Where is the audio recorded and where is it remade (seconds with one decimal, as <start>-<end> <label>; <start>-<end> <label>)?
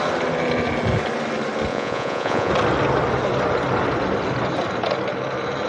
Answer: 0.0-1.7 recorded; 1.7-2.5 remade; 2.5-5.7 recorded